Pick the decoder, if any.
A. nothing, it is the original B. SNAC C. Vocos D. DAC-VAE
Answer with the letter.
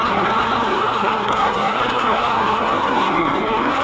B